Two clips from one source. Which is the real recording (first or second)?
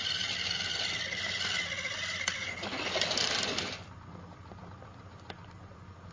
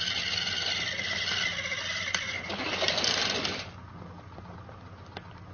second